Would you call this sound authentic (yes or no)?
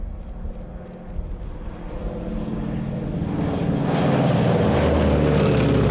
yes